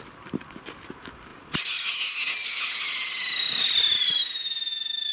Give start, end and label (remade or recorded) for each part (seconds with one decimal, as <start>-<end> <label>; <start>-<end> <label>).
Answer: 0.0-1.3 recorded; 1.3-1.9 remade; 1.9-5.1 recorded